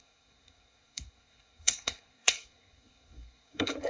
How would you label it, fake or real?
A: fake